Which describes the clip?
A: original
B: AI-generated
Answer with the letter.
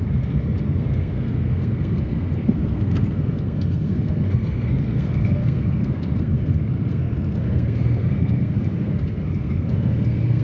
B